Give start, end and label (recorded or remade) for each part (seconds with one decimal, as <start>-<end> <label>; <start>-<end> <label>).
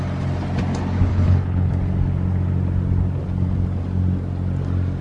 0.0-1.1 recorded; 1.1-1.7 remade; 1.7-5.0 recorded